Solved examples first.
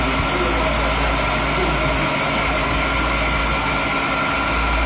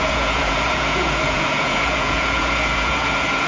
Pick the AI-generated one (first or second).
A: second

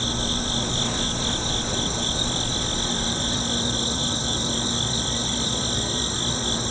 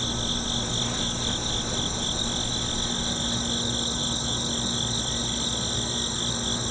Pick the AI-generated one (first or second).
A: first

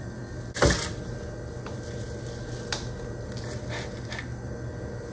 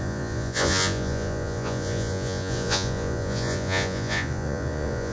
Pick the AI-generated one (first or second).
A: second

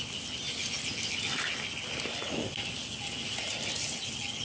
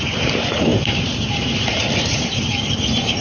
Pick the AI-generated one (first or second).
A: second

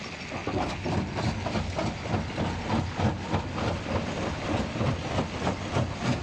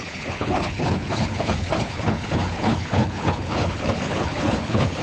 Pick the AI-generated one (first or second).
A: second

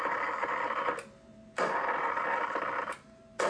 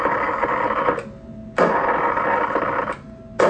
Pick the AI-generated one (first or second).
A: first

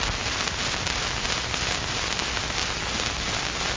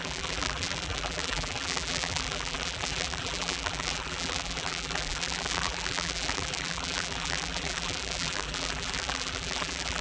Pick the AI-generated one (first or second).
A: second